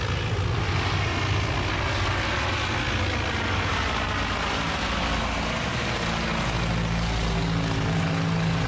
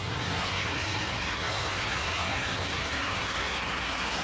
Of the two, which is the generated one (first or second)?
second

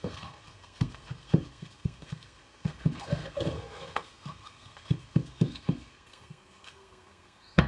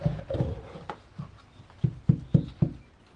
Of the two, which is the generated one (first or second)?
first